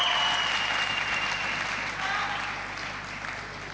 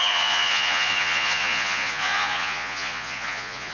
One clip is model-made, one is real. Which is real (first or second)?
first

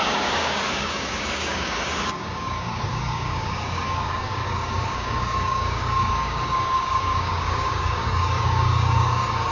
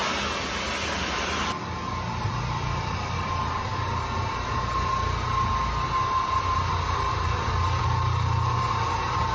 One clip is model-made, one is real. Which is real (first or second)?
second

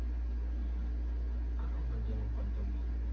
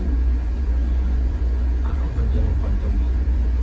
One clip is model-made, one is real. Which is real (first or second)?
first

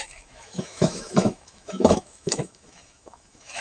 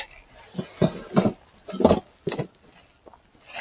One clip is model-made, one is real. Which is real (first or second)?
second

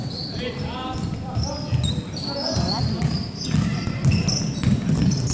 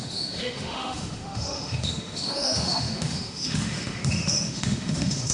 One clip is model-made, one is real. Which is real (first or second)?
first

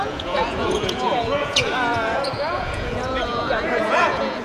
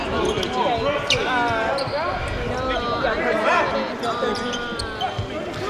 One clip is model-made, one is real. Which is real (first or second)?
second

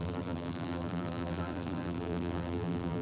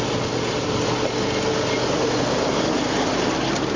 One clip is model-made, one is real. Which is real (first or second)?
second